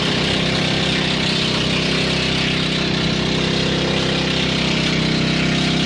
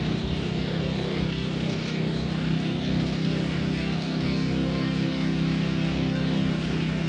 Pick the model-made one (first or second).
second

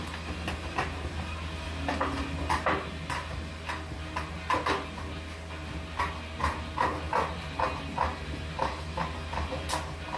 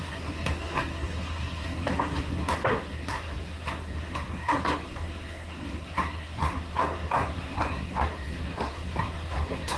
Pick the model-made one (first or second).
second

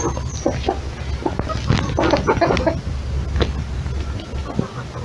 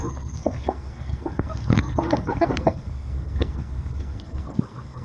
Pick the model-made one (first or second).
second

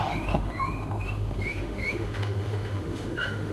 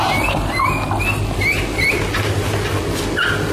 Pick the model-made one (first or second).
first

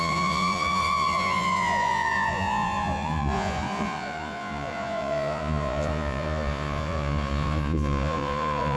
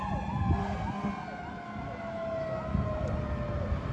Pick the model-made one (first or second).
first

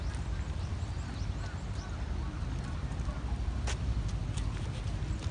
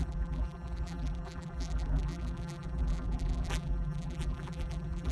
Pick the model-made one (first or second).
second